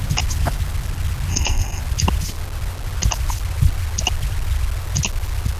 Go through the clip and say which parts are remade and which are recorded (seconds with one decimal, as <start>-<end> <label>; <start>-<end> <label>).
0.0-1.3 recorded; 1.3-1.8 remade; 1.8-5.6 recorded